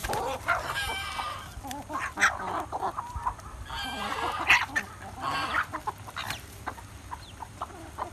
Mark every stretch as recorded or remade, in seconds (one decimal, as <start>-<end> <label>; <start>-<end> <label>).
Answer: 0.0-1.1 remade; 1.1-8.1 recorded